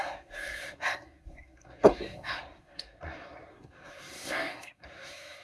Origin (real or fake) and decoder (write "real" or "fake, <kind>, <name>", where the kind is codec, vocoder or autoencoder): fake, codec, SNAC